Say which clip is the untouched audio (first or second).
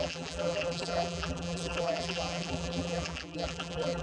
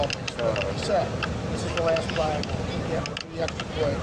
second